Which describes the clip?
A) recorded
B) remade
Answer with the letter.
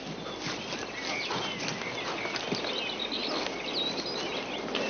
A